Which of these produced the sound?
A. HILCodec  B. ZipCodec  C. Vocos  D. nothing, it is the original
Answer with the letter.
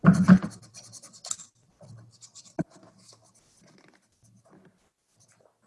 D